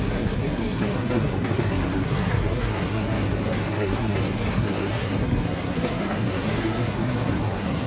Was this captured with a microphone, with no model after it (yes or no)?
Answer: no